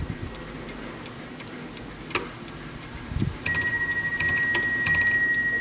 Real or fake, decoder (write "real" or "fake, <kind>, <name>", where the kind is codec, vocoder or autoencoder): real